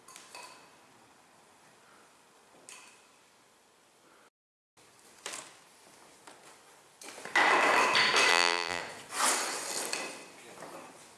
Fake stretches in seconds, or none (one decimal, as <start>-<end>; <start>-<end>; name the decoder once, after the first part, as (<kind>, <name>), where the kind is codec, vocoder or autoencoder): 8.3-8.8 (vocoder, BigVGAN v2)